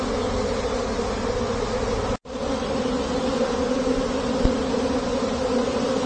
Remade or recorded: recorded